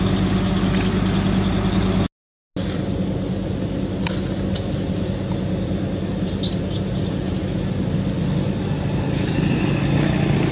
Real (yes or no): yes